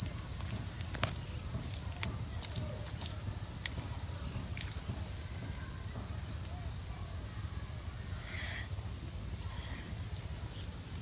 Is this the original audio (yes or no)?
yes